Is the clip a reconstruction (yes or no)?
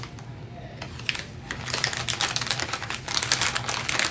no